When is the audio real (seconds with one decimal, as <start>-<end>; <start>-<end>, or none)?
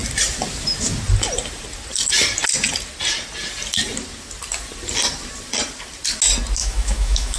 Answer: 0.0-6.6